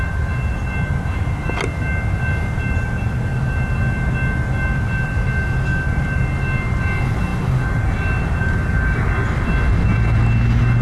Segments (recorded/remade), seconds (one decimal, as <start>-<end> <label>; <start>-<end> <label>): 0.0-10.8 recorded